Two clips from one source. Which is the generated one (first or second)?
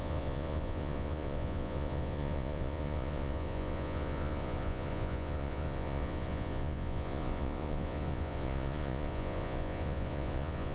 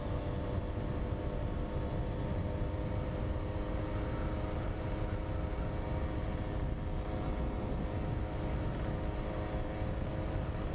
first